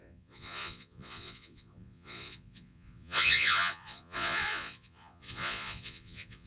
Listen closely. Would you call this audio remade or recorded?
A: remade